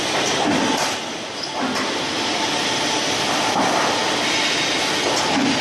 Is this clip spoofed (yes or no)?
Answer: no